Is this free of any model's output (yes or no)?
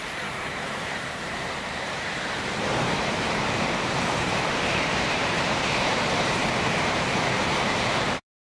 no